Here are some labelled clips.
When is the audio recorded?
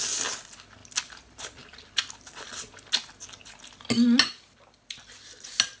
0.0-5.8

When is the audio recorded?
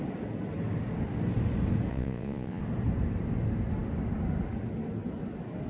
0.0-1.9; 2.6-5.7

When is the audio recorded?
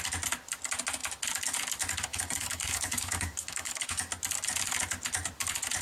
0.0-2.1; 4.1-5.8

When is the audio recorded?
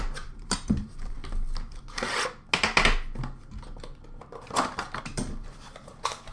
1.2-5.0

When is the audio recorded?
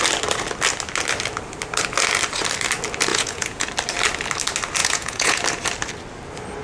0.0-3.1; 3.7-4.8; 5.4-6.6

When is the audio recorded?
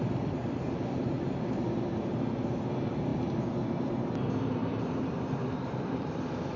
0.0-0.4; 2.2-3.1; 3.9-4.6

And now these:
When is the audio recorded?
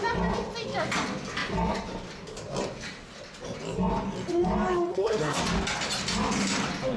0.0-4.9; 5.4-7.0